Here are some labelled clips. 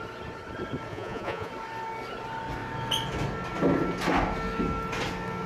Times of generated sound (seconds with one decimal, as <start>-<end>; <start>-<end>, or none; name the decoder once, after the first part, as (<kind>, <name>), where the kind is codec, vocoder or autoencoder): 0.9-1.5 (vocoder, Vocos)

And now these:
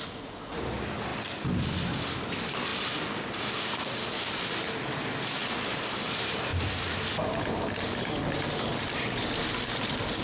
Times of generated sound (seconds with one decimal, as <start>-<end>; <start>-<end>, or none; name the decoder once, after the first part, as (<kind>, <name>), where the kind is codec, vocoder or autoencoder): none

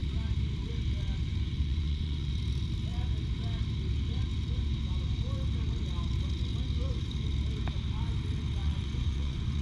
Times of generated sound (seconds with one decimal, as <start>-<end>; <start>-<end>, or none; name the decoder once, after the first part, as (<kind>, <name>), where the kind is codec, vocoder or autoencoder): 1.3-2.3 (vocoder, Vocos); 8.6-9.6